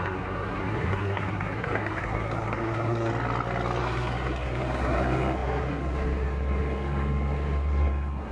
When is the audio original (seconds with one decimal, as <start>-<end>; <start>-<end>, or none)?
3.1-3.8